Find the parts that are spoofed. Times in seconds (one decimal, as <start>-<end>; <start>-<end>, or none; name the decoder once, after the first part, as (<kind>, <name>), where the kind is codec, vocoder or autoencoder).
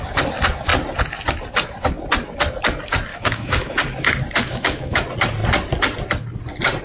3.1-3.7 (autoencoder, DAC-VAE); 4.4-5.0